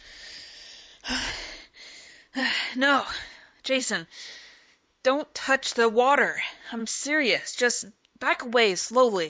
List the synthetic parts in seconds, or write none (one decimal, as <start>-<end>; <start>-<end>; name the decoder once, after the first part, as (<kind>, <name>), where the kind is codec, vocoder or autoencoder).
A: 3.8-5.7 (autoencoder, DAC-VAE); 6.8-8.8